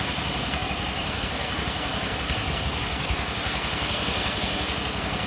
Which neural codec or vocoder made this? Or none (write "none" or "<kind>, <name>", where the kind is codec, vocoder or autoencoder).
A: codec, SNAC